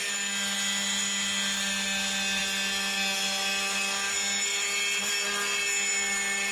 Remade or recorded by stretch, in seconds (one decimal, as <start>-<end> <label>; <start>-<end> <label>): 0.0-6.5 recorded